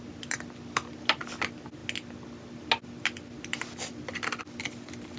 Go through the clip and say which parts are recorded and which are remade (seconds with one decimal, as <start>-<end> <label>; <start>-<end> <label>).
0.0-5.2 recorded